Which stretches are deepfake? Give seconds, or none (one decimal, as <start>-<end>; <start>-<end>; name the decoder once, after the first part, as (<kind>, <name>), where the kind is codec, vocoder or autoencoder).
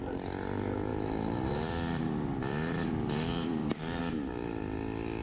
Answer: 0.9-4.0 (vocoder, BigVGAN v2)